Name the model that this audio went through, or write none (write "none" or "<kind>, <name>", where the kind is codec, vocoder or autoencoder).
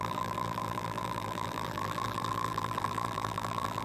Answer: vocoder, BigVGAN v2